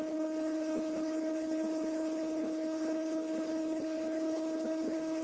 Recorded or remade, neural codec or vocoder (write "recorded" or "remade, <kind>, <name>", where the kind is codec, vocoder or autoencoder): remade, codec, HILCodec